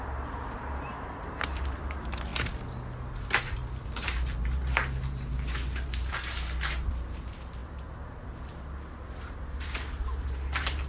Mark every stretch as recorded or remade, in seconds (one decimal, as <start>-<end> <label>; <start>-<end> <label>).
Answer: 0.0-2.3 remade; 2.3-3.4 recorded; 3.4-6.1 remade; 6.1-6.9 recorded; 6.9-10.9 remade

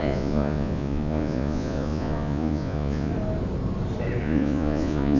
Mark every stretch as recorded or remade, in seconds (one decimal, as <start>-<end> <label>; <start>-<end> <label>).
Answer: 0.0-3.1 remade; 3.1-4.2 recorded; 4.2-5.2 remade

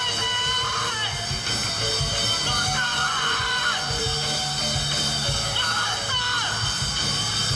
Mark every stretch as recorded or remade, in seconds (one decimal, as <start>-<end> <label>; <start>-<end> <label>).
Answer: 0.0-2.9 recorded; 2.9-4.0 remade; 4.0-7.5 recorded